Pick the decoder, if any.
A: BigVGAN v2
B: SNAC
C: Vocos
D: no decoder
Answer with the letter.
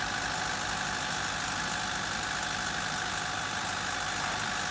D